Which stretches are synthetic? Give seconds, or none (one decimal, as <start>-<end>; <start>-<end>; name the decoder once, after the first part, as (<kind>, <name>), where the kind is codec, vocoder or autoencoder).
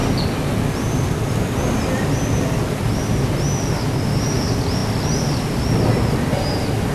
none